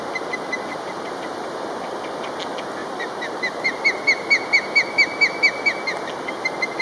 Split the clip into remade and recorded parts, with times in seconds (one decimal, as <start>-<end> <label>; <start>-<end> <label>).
0.0-0.7 recorded; 0.7-1.7 remade; 1.7-2.8 recorded; 2.8-3.8 remade; 3.8-6.8 recorded